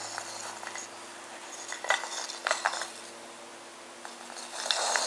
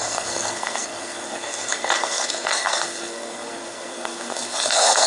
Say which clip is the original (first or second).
first